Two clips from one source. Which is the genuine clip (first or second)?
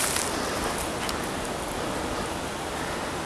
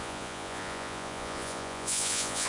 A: first